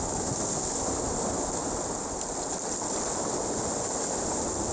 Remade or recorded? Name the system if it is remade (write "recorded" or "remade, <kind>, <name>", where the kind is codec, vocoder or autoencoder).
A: recorded